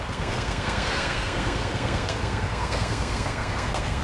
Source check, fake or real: fake